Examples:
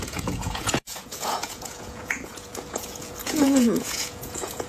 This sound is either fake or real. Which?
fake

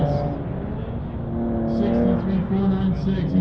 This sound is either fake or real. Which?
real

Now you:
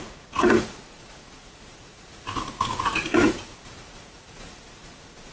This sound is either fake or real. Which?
fake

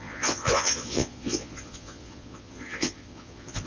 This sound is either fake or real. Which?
fake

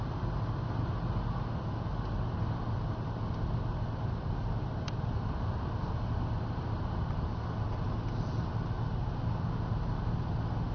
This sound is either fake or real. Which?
real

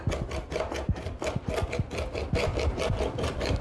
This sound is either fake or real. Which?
real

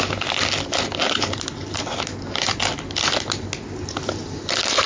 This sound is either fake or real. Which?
real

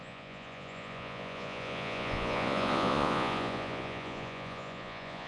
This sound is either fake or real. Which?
fake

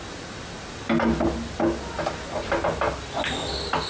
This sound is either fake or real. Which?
real